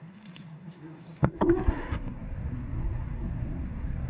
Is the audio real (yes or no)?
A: no